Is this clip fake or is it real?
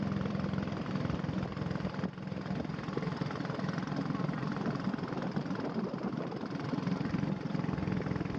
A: fake